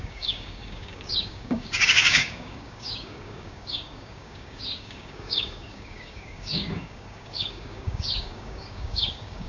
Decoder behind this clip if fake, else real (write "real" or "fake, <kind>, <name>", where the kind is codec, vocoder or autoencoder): fake, codec, DAC